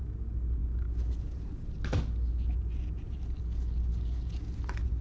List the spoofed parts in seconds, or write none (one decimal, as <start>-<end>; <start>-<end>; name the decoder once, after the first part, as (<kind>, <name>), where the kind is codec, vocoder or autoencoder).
none